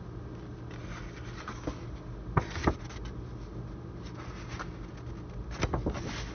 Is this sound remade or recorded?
recorded